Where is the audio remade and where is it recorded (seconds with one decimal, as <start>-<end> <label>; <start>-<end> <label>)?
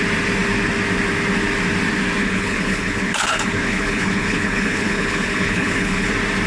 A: 0.0-2.2 recorded; 2.2-6.1 remade; 6.1-6.5 recorded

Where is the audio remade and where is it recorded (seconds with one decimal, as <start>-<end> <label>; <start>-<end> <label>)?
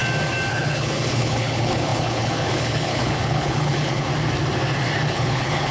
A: 0.0-0.5 recorded; 0.5-4.1 remade; 4.1-5.1 recorded; 5.1-5.7 remade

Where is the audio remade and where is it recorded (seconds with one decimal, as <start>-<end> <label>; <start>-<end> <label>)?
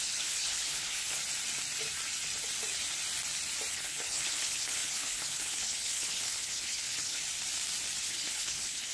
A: 0.0-1.2 remade; 1.2-3.7 recorded; 3.7-7.2 remade; 7.2-8.0 recorded; 8.0-8.9 remade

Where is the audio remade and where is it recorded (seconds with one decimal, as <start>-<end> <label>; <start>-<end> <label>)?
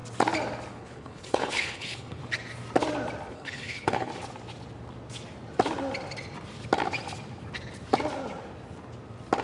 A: 0.0-0.7 recorded; 0.7-2.2 remade; 2.2-3.3 recorded; 3.3-4.1 remade; 4.1-9.4 recorded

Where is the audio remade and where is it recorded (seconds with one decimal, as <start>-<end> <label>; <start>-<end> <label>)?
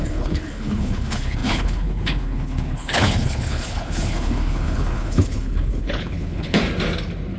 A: 0.0-6.6 remade; 6.6-7.4 recorded